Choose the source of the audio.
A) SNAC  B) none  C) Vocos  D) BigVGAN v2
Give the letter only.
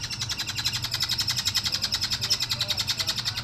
B